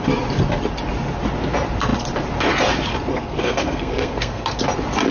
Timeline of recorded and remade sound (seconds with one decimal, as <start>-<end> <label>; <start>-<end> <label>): 0.0-3.1 recorded; 3.1-4.6 remade; 4.6-5.1 recorded